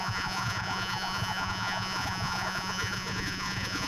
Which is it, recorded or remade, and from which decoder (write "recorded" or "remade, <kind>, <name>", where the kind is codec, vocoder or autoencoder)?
remade, vocoder, Vocos